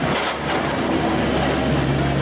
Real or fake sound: real